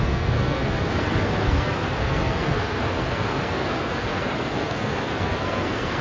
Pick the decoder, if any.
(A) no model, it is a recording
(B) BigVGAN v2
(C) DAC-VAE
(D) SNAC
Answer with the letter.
D